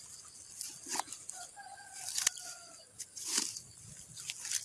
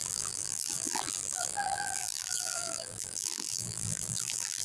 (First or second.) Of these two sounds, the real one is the first